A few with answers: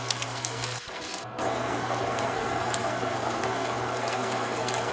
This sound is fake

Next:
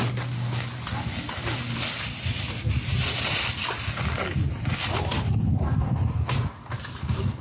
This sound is real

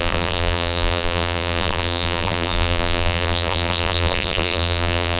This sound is fake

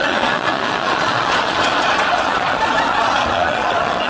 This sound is fake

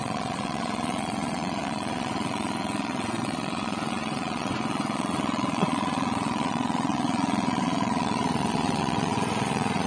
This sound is fake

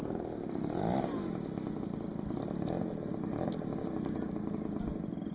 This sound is real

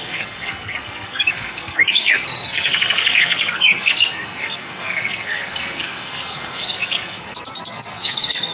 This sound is fake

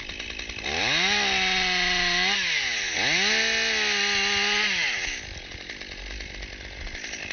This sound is real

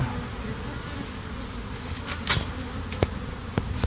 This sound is real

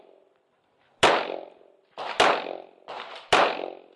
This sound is real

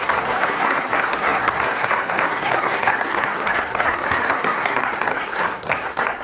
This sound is fake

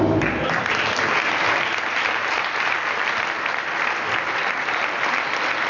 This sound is real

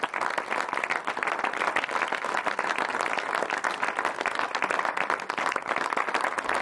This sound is real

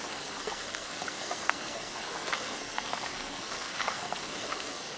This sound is fake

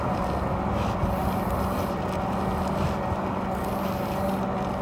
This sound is real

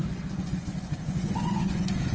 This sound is fake